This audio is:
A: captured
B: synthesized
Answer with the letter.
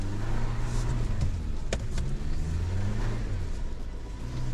A